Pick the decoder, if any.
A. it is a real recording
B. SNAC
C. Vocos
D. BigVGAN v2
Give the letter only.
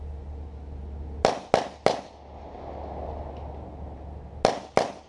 A